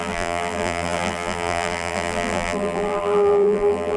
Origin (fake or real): fake